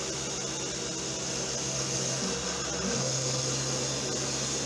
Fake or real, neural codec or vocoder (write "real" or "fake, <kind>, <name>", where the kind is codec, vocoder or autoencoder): real